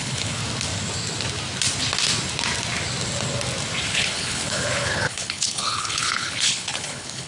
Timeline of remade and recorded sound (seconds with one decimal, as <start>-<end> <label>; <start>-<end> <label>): 0.0-0.4 remade; 0.4-3.9 recorded; 3.9-7.3 remade